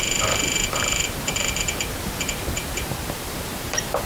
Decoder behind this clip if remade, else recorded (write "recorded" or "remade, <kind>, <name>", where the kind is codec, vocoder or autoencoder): remade, vocoder, BigVGAN v2